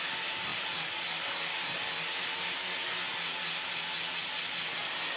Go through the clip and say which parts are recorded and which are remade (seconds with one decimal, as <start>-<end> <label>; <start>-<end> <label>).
0.0-5.2 recorded